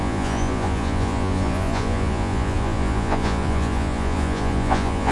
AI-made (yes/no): yes